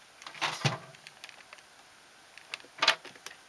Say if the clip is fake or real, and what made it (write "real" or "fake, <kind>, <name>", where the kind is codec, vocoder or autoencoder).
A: real